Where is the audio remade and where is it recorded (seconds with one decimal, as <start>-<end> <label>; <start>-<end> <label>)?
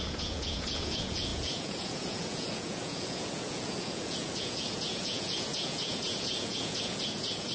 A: 0.0-7.5 remade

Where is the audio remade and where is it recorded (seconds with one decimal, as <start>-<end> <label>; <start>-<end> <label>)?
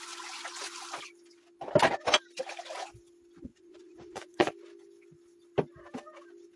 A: 0.0-3.5 recorded; 3.5-4.5 remade; 4.5-6.6 recorded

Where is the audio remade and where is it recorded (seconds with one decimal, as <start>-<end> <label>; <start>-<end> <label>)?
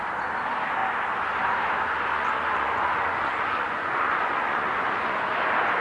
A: 0.0-2.1 recorded; 2.1-5.1 remade; 5.1-5.8 recorded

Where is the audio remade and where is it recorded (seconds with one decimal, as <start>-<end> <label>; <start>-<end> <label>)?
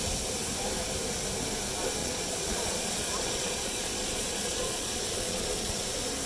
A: 0.0-2.0 recorded; 2.0-5.8 remade; 5.8-6.3 recorded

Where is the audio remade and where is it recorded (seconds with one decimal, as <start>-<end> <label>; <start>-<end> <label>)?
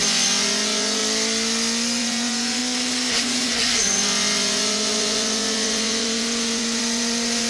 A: 0.0-1.0 remade; 1.0-2.0 recorded; 2.0-2.6 remade; 2.6-3.1 recorded; 3.1-7.5 remade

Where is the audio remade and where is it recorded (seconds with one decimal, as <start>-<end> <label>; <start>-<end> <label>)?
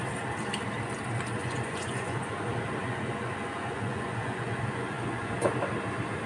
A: 0.0-1.4 recorded; 1.4-2.3 remade; 2.3-2.8 recorded; 2.8-5.5 remade; 5.5-6.3 recorded